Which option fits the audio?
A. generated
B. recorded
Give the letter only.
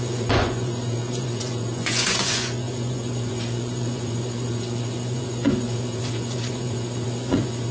A